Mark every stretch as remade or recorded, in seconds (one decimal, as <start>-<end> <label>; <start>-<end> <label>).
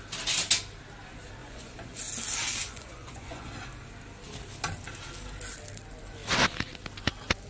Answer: 0.0-1.4 recorded; 1.4-2.0 remade; 2.0-2.6 recorded; 2.6-3.5 remade; 3.5-7.5 recorded